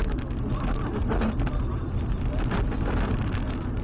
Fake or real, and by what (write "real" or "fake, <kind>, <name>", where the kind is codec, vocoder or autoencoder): real